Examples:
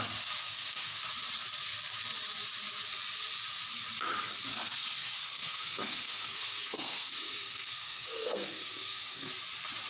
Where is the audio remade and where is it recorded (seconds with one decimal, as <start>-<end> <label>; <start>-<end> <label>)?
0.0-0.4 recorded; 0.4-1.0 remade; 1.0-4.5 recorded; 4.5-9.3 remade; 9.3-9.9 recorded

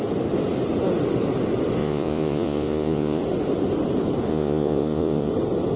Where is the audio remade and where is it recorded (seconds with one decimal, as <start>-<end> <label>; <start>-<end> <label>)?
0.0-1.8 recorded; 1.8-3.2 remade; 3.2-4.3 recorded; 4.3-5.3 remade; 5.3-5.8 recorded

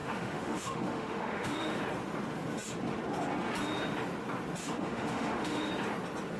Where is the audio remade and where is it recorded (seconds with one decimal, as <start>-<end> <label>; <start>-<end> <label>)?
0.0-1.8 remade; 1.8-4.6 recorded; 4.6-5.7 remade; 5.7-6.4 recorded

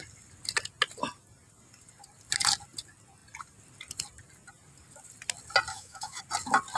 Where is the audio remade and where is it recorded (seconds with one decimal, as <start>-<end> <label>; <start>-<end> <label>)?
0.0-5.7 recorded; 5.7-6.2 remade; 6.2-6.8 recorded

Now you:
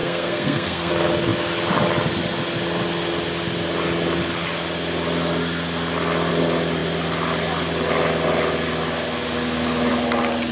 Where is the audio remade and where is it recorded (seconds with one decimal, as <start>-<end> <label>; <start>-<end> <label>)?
0.0-0.9 remade; 0.9-10.5 recorded